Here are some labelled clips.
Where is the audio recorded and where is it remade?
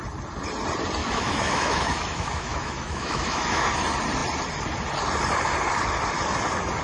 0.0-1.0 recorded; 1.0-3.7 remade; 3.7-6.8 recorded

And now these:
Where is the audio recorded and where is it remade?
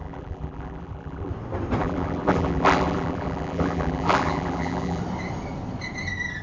0.0-1.3 remade; 1.3-1.8 recorded; 1.8-5.0 remade; 5.0-6.4 recorded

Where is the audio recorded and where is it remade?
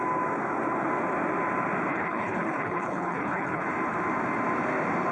0.0-1.9 recorded; 1.9-3.6 remade; 3.6-5.1 recorded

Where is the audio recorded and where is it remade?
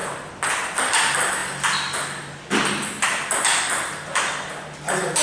0.0-5.2 recorded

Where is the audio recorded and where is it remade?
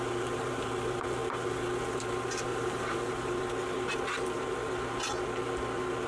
0.0-2.5 recorded; 2.5-3.4 remade; 3.4-6.1 recorded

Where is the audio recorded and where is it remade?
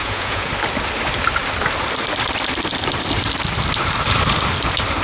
0.0-0.5 remade; 0.5-5.0 recorded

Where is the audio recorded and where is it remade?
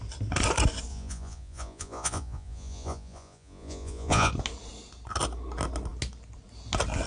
0.0-0.9 recorded; 0.9-4.3 remade; 4.3-7.1 recorded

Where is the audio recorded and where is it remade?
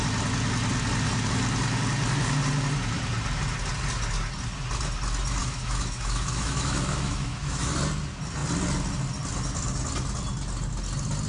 0.0-5.4 recorded; 5.4-7.7 remade; 7.7-11.3 recorded